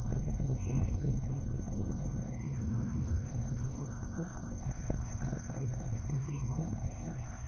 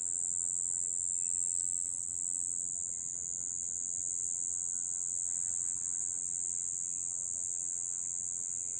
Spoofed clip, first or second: first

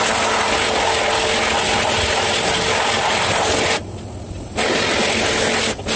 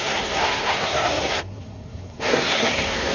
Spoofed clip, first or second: second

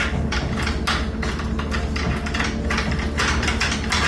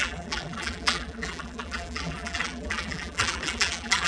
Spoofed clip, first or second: second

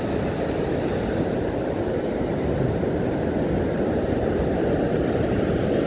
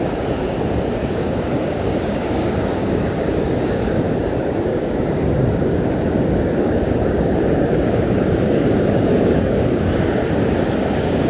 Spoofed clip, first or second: second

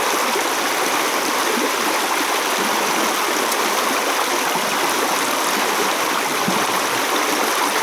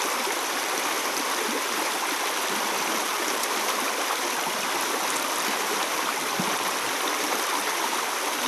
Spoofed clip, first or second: second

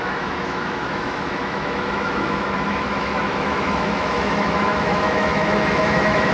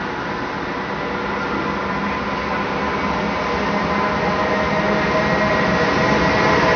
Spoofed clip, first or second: first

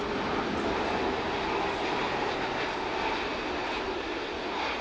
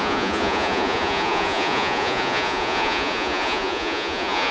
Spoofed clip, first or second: second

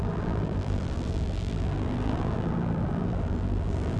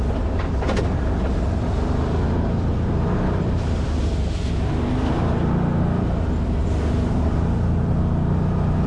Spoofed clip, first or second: first